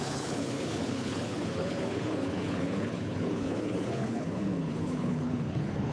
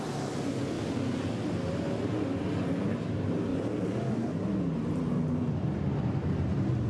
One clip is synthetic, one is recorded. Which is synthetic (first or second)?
first